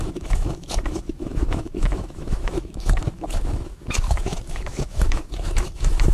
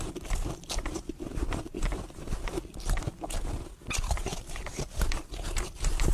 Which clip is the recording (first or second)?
second